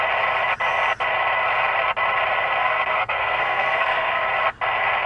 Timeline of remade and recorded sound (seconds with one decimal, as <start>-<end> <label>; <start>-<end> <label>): 0.0-2.6 recorded; 2.6-4.2 remade; 4.2-5.1 recorded